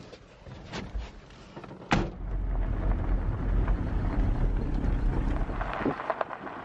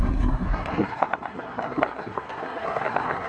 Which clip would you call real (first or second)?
first